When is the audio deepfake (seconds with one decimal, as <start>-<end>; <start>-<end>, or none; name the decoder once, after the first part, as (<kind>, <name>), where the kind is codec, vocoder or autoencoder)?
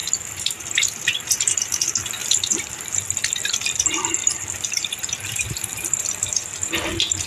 0.0-0.6 (vocoder, BigVGAN v2); 2.2-3.0; 4.2-6.7